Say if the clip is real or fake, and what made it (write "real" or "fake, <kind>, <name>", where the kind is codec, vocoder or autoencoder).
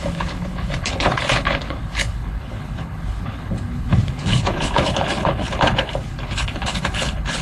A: fake, codec, HILCodec